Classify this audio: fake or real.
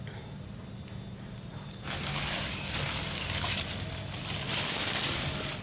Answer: real